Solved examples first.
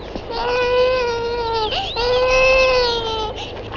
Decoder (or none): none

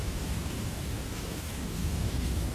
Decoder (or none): codec, DAC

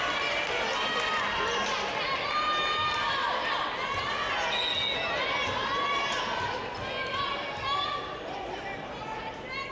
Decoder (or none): none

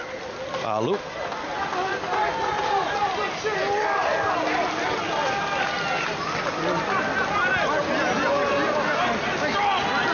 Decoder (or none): none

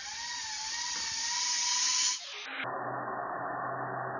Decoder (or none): none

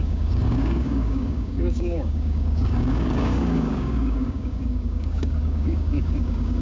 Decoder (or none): codec, DAC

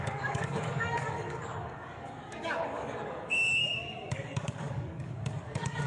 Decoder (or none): codec, DAC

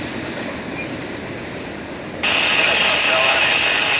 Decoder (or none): none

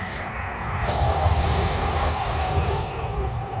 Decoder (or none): codec, DAC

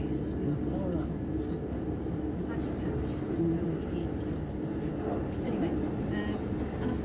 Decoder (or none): none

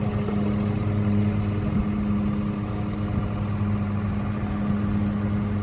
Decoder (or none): none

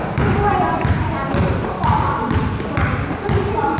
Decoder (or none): none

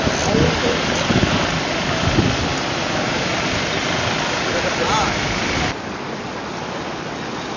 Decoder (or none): none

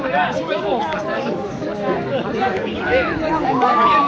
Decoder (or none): codec, DAC